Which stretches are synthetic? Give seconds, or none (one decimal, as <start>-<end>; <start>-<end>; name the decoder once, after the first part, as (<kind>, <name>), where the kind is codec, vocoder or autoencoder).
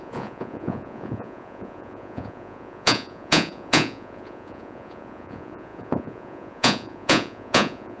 0.0-8.0 (vocoder, Vocos)